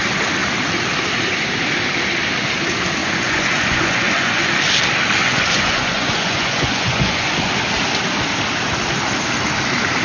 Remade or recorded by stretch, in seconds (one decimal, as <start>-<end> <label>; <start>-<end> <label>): 0.0-3.0 recorded; 3.0-4.5 remade; 4.5-5.2 recorded; 5.2-7.5 remade; 7.5-10.0 recorded